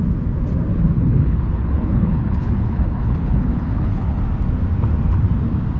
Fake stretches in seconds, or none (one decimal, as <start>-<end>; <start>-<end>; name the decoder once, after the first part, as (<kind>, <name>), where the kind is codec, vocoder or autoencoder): 0.7-4.2 (codec, HILCodec)